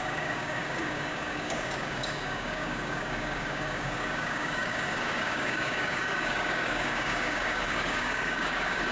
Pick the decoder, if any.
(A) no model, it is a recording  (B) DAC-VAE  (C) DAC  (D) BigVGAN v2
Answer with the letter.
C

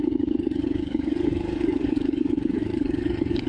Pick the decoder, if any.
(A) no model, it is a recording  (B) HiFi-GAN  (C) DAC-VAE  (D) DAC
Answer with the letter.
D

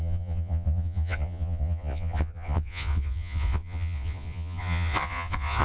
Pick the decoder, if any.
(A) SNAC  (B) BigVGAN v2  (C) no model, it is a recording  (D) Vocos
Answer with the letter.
D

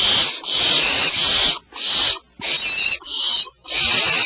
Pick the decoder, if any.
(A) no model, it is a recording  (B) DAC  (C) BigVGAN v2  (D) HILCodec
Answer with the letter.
A